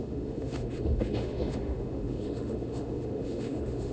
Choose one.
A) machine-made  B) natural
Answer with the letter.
A